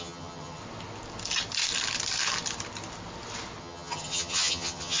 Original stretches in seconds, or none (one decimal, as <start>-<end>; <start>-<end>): 0.6-3.6